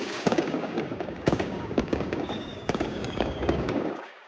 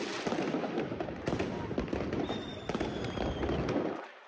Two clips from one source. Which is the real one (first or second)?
second